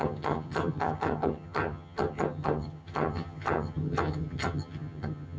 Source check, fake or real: fake